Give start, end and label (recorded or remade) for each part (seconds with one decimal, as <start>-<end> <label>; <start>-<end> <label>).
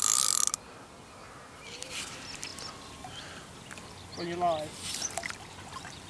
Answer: 0.0-6.1 recorded